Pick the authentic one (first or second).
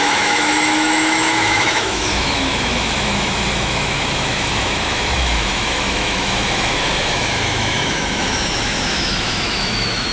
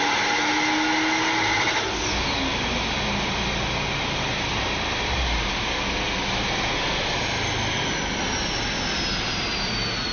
second